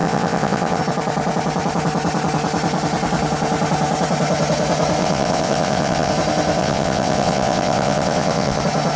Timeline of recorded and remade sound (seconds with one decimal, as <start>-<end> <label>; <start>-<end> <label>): 0.0-0.8 remade; 0.8-5.0 recorded; 5.0-6.1 remade; 6.1-6.6 recorded; 6.6-8.6 remade; 8.6-9.0 recorded